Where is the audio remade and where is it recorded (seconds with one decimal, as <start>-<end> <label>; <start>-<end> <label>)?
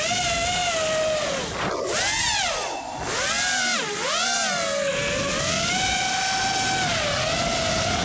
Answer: 0.0-8.0 recorded